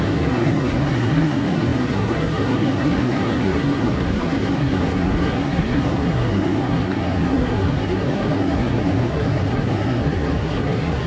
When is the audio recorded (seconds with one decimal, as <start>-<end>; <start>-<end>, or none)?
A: none